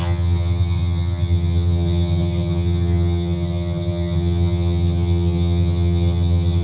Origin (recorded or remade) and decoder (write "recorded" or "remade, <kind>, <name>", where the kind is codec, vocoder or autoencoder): remade, vocoder, HiFi-GAN